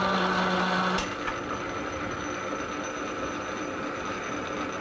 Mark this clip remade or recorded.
recorded